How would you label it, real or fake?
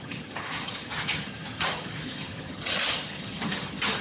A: fake